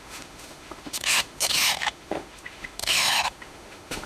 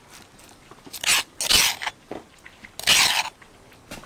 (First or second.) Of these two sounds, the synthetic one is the first